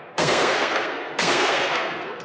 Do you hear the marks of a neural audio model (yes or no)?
yes